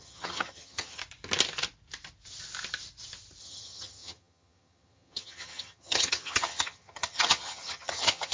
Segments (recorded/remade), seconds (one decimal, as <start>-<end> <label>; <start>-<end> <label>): 0.0-1.0 remade; 1.0-3.4 recorded; 3.4-8.3 remade